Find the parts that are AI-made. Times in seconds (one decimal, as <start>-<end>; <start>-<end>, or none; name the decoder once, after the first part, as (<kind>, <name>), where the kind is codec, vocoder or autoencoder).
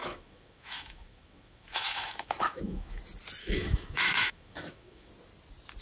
0.0-3.0 (autoencoder, DAC-VAE); 3.4-5.1